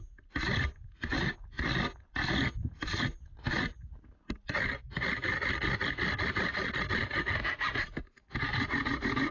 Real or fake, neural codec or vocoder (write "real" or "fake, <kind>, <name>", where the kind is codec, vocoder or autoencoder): real